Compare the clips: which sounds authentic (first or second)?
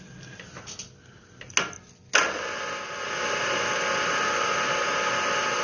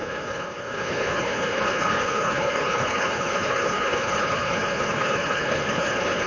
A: first